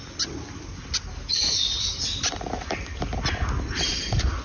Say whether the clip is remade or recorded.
recorded